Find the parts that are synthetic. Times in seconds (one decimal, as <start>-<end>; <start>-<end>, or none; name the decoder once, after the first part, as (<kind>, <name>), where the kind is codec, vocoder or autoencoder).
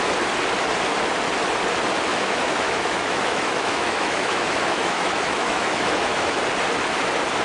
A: 2.1-6.4 (autoencoder, DAC-VAE)